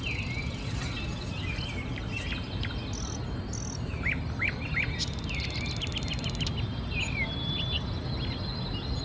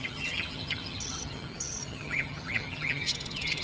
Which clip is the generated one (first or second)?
second